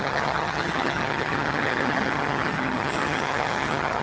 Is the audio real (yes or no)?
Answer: no